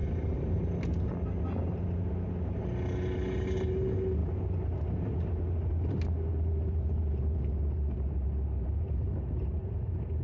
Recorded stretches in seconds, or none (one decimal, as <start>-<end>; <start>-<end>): 0.6-1.6; 2.6-6.3